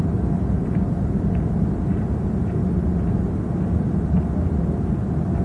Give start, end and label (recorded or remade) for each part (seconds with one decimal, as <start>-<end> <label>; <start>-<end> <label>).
0.0-5.4 recorded